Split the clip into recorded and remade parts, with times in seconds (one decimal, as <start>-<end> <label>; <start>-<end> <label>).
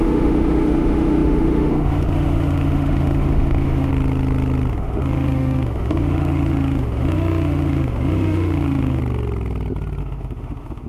0.0-3.9 remade; 3.9-4.7 recorded; 4.7-9.0 remade; 9.0-10.0 recorded; 10.0-10.9 remade